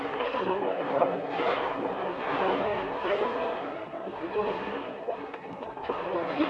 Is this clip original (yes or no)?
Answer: no